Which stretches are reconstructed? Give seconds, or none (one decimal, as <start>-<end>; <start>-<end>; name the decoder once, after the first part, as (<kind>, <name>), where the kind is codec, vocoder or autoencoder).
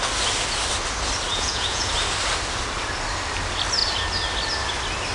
1.3-1.9 (vocoder, Vocos)